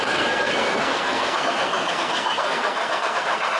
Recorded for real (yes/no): no